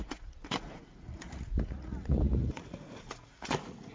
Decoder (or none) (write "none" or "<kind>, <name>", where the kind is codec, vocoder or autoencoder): vocoder, Vocos